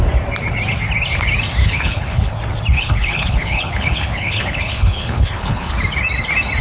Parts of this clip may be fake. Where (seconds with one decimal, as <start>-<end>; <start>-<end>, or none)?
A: 1.6-2.3; 2.7-5.7

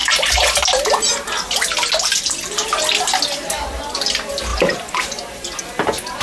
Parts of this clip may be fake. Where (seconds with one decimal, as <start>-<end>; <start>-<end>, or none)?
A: 4.5-5.6

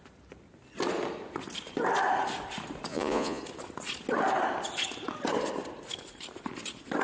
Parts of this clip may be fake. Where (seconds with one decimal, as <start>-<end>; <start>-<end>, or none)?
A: 2.9-3.4

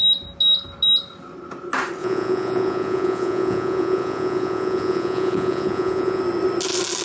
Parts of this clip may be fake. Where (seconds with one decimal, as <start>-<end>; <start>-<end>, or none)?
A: 2.0-6.2